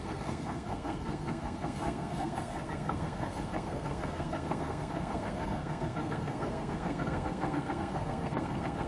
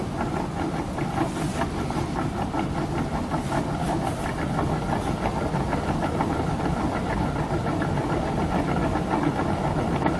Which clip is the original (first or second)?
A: second